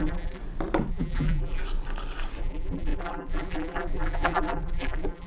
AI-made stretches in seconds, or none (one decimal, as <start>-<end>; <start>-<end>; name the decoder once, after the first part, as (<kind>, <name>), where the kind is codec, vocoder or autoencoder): 0.0-0.4 (vocoder, BigVGAN v2); 0.9-1.6; 2.4-5.3